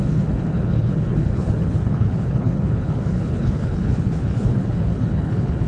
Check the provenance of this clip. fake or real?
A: fake